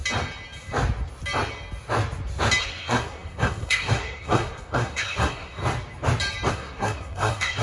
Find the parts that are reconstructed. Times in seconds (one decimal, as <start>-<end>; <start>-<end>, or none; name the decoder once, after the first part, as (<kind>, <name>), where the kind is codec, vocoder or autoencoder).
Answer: 2.6-5.6 (codec, SNAC); 6.5-7.6